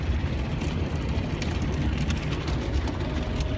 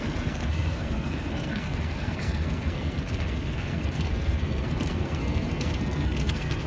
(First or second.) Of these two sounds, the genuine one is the first